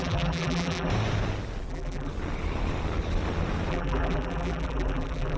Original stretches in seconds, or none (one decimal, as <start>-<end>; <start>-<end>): 0.9-1.7; 2.1-3.7